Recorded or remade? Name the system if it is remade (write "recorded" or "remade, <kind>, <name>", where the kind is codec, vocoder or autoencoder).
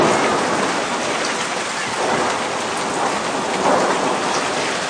recorded